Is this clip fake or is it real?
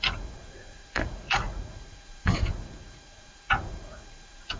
fake